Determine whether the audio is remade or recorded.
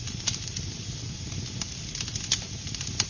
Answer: recorded